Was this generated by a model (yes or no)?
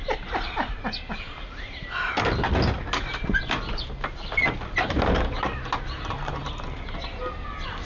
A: no